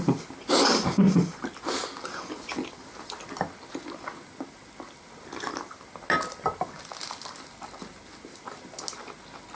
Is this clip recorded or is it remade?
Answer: recorded